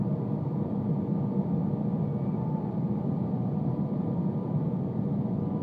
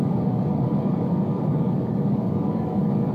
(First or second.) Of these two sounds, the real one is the first